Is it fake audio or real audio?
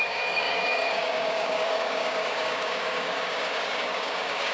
fake